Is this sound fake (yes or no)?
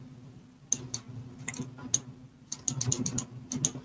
no